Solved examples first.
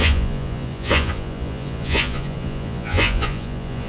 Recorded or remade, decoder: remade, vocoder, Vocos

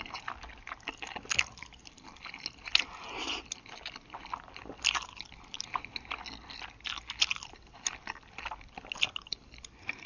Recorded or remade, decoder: recorded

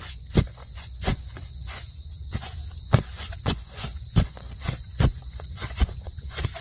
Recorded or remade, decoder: remade, vocoder, Vocos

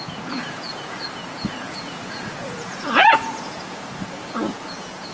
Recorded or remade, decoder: remade, vocoder, Vocos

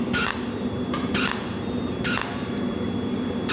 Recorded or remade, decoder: recorded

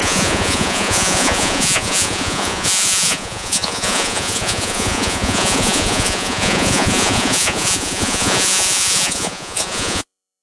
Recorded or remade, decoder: remade, vocoder, Vocos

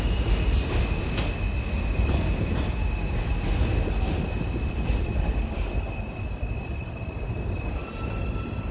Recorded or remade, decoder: recorded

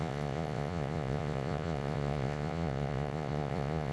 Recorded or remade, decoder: remade, vocoder, Vocos